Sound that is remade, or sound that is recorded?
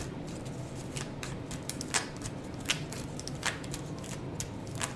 recorded